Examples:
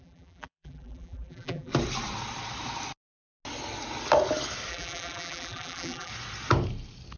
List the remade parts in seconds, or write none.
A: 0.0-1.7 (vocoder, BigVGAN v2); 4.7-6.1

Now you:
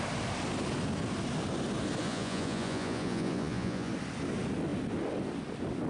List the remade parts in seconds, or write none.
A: 2.0-3.9 (vocoder, Vocos)

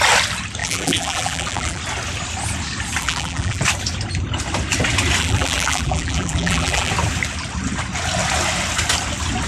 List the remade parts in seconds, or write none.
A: 0.6-1.8 (vocoder, BigVGAN v2); 3.0-3.6; 5.2-6.9

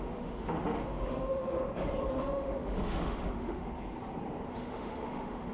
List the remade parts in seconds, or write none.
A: 0.0-1.6 (autoencoder, DAC-VAE); 2.1-3.7; 4.5-5.5

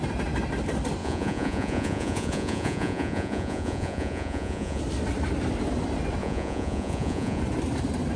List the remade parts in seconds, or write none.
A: 1.0-4.8 (vocoder, Vocos); 6.2-7.4

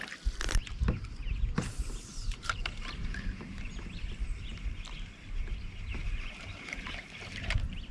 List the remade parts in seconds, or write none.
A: 2.4-3.8 (vocoder, BigVGAN v2); 5.9-6.9

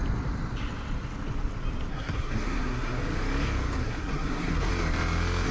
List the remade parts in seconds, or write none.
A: 1.9-3.0 (codec, SNAC); 3.8-4.7